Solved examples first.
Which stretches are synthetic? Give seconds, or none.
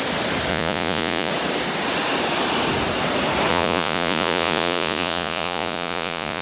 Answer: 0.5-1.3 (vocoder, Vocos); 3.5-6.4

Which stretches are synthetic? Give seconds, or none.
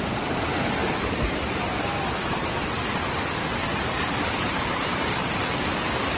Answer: 3.7-5.4 (vocoder, BigVGAN v2)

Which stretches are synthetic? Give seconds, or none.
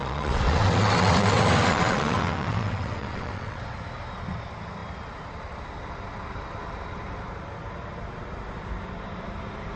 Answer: 0.0-3.6 (vocoder, WaveNeXt)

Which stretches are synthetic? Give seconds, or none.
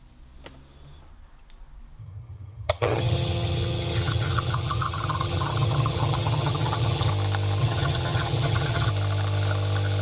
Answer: 2.0-7.1 (vocoder, HiFi-GAN); 7.6-8.9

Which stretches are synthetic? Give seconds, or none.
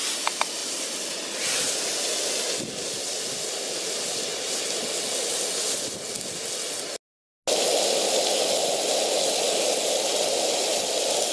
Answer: none